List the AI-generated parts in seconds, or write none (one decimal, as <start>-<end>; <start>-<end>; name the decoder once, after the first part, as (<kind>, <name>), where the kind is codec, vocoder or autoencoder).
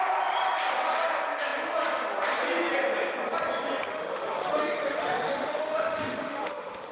3.9-6.9 (autoencoder, DAC-VAE)